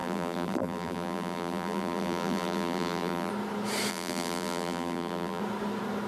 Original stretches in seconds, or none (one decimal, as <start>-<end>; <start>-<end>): 3.3-3.9; 5.4-6.1